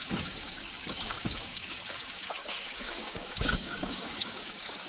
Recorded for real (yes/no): no